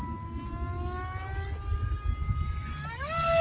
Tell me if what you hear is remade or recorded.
recorded